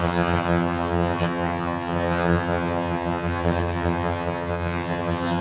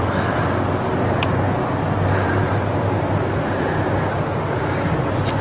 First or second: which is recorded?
second